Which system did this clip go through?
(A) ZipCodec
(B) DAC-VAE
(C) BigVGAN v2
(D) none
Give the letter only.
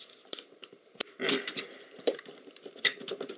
C